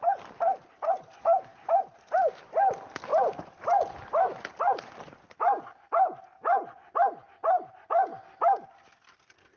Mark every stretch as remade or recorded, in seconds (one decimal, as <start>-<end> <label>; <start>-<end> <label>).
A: 0.0-9.6 recorded